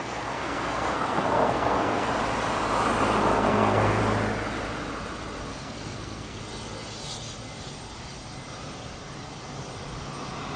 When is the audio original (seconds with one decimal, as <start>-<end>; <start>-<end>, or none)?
2.1-3.3; 4.0-5.5; 6.4-10.6

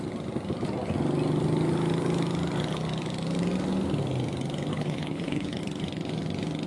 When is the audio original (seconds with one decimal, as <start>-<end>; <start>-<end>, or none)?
0.0-4.7; 5.6-6.7

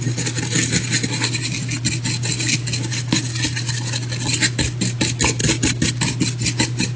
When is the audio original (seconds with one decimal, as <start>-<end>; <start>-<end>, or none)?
0.0-7.0

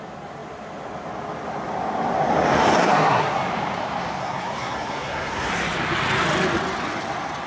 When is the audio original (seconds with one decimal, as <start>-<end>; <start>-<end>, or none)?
0.0-2.8; 3.5-4.2; 5.5-7.5

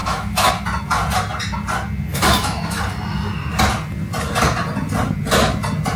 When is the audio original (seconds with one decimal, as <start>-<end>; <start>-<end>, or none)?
0.5-2.1; 2.8-6.0

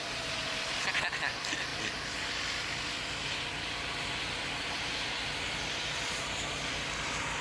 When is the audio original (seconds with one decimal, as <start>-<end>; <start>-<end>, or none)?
0.0-7.4

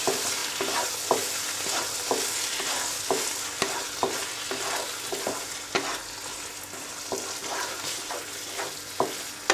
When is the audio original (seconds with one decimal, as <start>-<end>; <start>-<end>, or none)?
0.0-7.4; 8.4-9.5

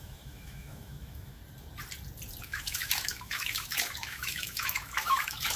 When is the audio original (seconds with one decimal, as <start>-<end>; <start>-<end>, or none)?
1.4-2.4